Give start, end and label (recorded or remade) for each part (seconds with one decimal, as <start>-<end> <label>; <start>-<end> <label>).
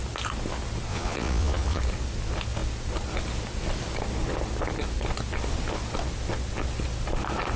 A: 0.0-0.9 recorded; 0.9-1.8 remade; 1.8-7.6 recorded